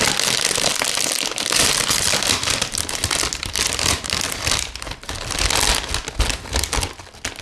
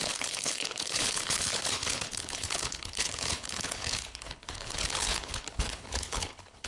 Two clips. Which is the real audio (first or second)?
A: first